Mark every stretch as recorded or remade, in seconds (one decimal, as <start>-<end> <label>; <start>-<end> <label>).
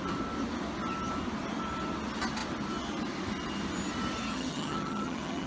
0.0-4.3 recorded; 4.3-5.5 remade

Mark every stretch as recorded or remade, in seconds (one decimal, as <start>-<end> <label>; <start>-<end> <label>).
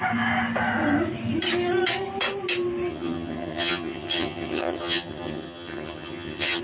0.0-2.9 recorded; 2.9-6.6 remade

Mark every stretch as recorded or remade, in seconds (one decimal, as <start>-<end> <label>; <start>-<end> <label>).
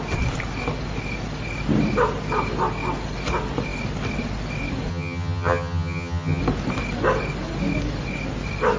0.0-4.9 recorded; 4.9-6.4 remade; 6.4-8.8 recorded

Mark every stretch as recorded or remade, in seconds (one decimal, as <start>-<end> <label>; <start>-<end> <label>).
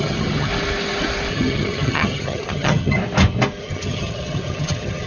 0.0-0.5 remade; 0.5-1.3 recorded; 1.3-3.0 remade; 3.0-3.6 recorded; 3.6-5.1 remade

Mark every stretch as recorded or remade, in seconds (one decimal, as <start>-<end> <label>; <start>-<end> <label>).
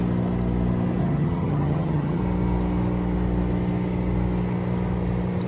0.0-1.0 recorded; 1.0-2.2 remade; 2.2-5.5 recorded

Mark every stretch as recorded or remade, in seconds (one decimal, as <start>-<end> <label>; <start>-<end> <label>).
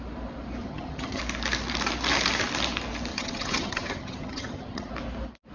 0.0-0.6 recorded; 0.6-1.2 remade; 1.2-3.1 recorded; 3.1-4.9 remade; 4.9-5.5 recorded